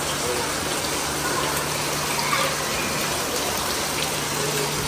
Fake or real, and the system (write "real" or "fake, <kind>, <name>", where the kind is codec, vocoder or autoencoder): real